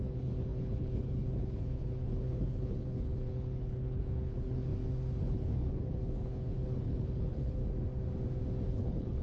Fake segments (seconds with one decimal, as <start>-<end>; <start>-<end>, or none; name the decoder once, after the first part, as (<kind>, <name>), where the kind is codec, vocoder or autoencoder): 0.0-4.7 (codec, HILCodec); 5.2-7.6; 8.7-9.2